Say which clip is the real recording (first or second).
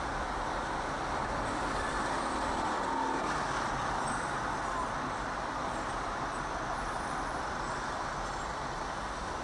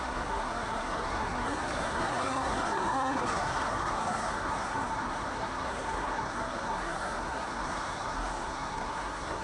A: first